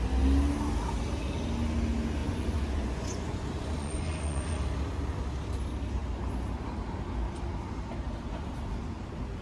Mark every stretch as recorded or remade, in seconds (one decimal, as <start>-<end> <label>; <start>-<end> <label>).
0.0-2.2 recorded; 2.2-4.6 remade; 4.6-9.4 recorded